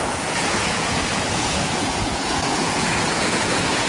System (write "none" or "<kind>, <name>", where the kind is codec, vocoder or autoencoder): vocoder, Vocos